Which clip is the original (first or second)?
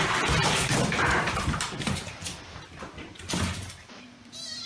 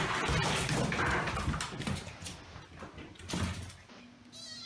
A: second